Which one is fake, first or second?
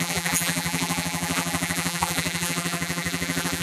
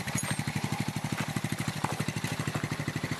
first